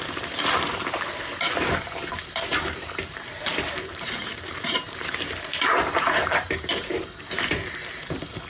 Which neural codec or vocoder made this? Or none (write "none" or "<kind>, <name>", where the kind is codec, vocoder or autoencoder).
vocoder, BigVGAN v2